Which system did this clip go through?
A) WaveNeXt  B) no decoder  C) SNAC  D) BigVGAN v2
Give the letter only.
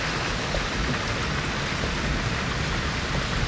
B